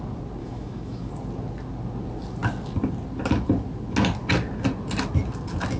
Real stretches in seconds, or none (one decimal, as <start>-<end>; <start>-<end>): 0.0-0.4; 1.1-5.8

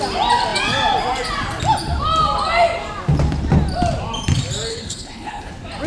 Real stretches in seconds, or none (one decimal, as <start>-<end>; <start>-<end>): 0.0-4.7; 5.5-5.9

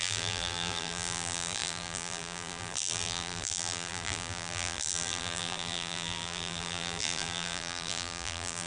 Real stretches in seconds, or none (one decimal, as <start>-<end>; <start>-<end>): none

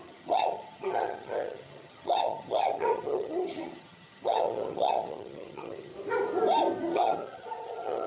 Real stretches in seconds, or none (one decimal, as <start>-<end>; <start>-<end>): 5.9-6.8

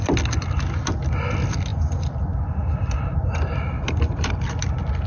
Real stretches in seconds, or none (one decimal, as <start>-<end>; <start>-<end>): 0.0-5.1

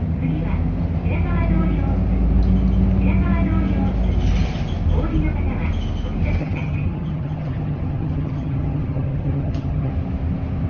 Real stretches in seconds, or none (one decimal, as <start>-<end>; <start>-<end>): 0.0-6.4; 9.9-10.7

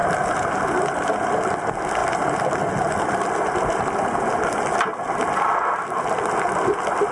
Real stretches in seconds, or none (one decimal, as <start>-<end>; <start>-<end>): 0.0-7.1